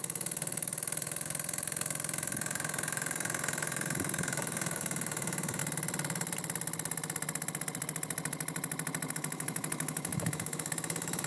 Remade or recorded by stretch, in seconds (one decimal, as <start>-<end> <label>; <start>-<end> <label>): 0.0-5.6 remade; 5.6-9.1 recorded; 9.1-11.3 remade